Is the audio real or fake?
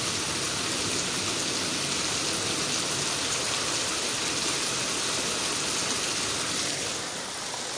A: real